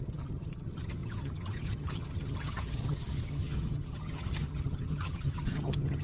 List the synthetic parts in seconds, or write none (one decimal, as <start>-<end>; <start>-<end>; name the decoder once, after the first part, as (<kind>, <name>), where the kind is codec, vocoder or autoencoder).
0.0-6.0 (vocoder, HiFi-GAN)